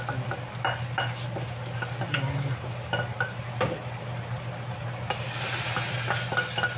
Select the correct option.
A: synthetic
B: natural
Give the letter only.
B